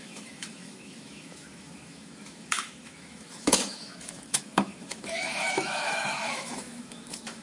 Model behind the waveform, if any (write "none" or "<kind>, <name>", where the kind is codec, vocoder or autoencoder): autoencoder, DAC-VAE